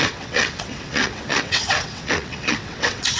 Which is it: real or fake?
fake